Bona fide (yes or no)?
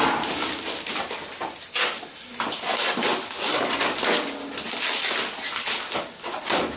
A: yes